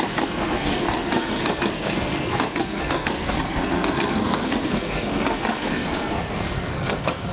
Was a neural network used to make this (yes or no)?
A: yes